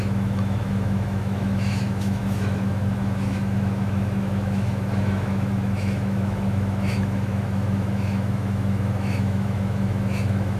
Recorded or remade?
remade